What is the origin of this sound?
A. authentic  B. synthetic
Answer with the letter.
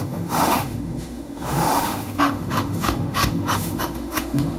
B